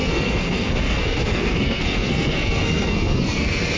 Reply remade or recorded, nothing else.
remade